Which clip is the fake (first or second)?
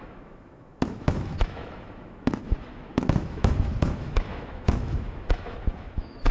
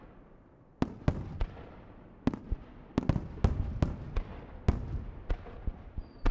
first